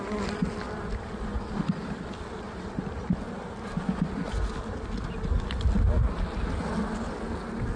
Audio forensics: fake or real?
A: real